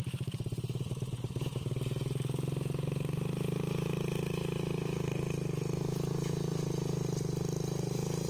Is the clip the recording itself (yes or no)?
yes